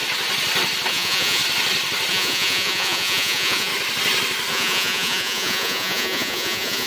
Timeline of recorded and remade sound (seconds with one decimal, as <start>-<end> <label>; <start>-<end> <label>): 0.0-0.9 recorded; 0.9-1.4 remade; 1.4-2.1 recorded; 2.1-3.7 remade; 3.7-4.5 recorded; 4.5-6.9 remade